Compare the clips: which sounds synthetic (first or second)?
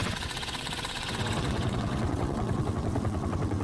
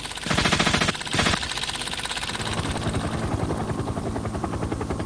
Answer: first